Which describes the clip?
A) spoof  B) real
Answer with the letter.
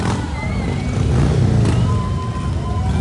B